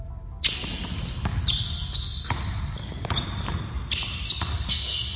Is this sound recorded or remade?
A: recorded